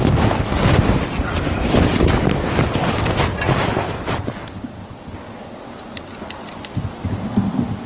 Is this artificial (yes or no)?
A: no